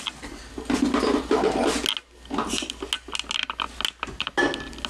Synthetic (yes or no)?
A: no